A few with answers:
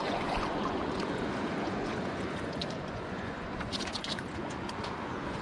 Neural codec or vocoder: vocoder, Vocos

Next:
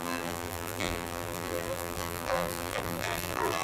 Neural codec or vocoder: vocoder, BigVGAN v2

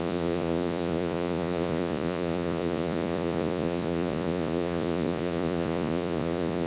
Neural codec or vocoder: vocoder, Vocos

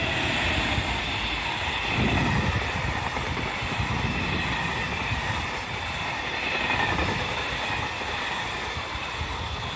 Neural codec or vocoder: none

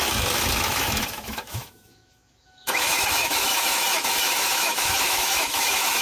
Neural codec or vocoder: autoencoder, DAC-VAE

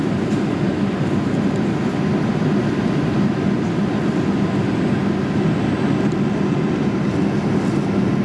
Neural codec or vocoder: none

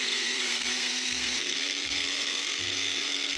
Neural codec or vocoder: codec, SNAC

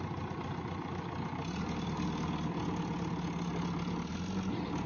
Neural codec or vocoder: none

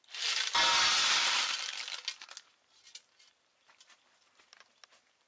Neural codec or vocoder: none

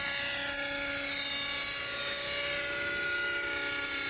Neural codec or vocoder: none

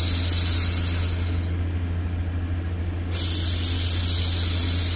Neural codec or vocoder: none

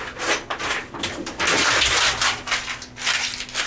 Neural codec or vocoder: none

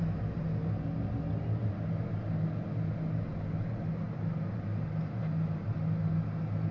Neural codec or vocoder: none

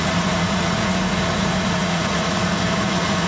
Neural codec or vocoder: vocoder, Vocos